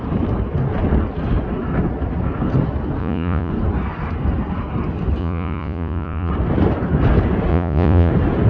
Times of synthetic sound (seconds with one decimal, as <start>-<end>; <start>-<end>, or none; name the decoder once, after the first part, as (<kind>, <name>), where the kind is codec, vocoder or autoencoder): 3.0-3.5 (vocoder, Vocos); 5.2-6.3; 7.5-8.1